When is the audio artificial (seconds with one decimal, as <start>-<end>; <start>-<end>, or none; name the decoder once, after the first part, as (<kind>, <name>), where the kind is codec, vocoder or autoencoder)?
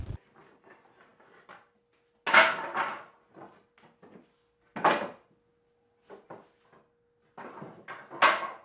none